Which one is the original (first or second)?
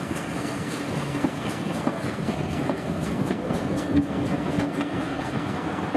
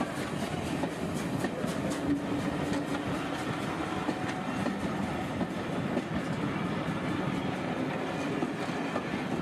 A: second